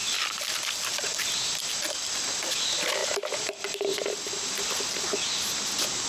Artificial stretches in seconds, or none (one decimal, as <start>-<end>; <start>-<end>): none